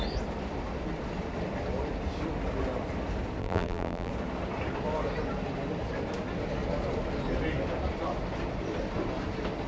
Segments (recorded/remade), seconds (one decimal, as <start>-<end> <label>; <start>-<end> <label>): 0.0-3.4 recorded; 3.4-4.1 remade; 4.1-9.7 recorded